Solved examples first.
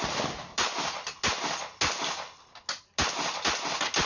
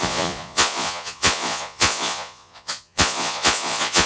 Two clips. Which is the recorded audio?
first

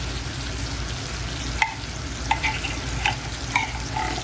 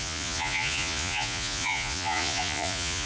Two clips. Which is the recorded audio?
first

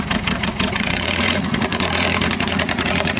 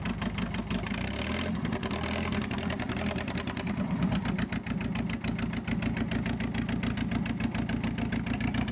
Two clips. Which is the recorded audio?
second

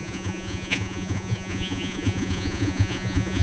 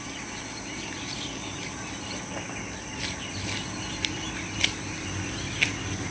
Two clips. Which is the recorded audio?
second